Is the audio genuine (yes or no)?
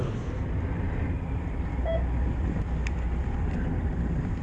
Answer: no